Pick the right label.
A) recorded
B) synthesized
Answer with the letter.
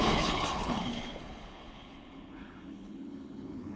B